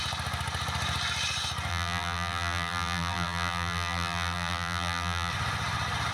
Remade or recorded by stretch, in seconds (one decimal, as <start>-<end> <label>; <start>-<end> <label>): 0.0-1.7 recorded; 1.7-5.3 remade; 5.3-6.1 recorded